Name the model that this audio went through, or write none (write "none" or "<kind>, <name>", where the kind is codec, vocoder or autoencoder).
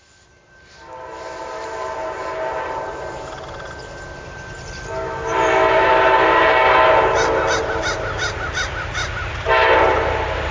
none